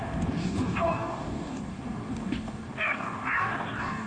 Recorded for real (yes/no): no